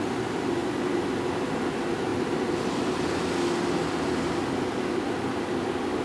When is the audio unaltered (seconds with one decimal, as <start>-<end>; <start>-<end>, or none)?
0.0-6.0